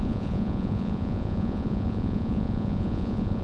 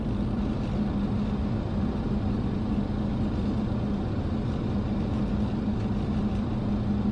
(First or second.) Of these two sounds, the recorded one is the second